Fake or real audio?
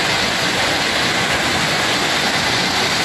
fake